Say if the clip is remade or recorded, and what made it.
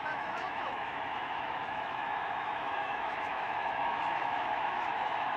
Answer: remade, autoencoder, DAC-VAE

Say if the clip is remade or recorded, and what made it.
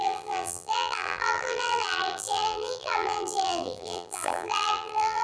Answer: remade, vocoder, BigVGAN v2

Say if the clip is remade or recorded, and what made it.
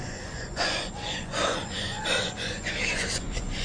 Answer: remade, vocoder, Vocos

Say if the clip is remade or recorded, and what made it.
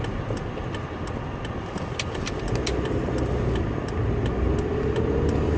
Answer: recorded